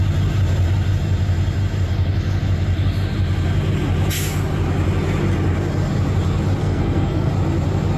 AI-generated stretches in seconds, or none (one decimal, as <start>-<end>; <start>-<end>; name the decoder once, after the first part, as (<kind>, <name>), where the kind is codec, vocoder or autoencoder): 6.6-7.3 (codec, SNAC)